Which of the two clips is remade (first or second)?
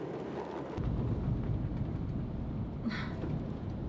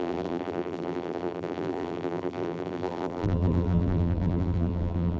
second